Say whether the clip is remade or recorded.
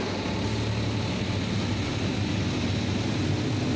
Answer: recorded